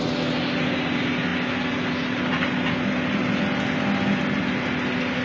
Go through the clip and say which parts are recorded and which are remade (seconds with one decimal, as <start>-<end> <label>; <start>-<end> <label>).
0.0-5.2 recorded